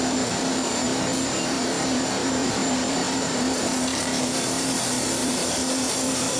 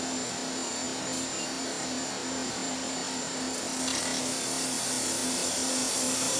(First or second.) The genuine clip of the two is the second